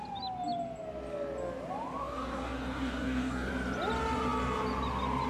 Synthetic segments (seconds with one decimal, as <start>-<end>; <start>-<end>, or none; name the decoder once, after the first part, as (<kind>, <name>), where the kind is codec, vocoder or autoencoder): 2.0-3.5 (codec, DAC)